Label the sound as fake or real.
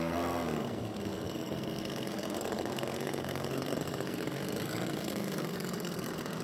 fake